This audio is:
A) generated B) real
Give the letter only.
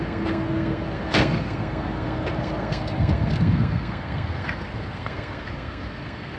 A